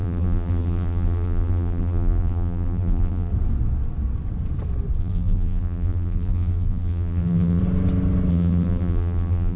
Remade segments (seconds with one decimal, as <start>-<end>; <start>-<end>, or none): 0.0-3.3; 5.0-7.6; 8.3-9.6